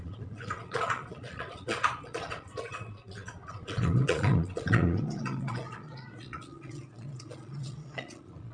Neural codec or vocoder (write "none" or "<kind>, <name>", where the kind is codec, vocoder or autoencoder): vocoder, Vocos